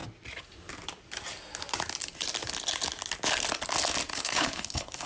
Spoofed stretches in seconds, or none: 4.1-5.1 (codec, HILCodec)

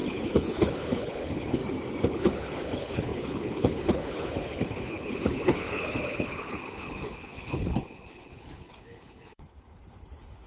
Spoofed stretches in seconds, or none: 0.0-1.6 (codec, HILCodec); 2.1-10.5

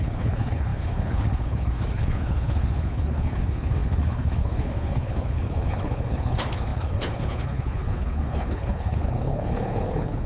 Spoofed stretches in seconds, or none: 0.0-10.3 (codec, HILCodec)

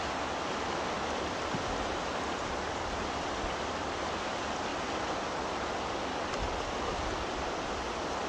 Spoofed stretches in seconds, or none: none

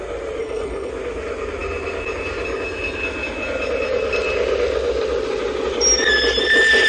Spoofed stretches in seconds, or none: 0.4-0.9 (codec, HILCodec)

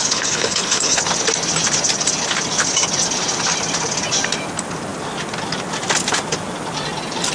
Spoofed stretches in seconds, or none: 0.0-1.0 (codec, HILCodec)

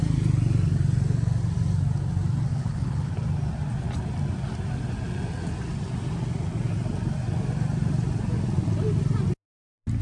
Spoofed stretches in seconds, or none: 2.5-3.1 (codec, HILCodec)